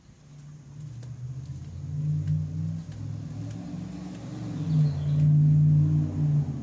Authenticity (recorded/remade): recorded